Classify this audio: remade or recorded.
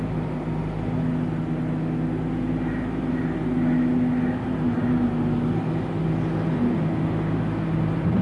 recorded